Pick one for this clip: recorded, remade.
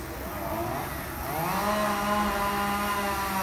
recorded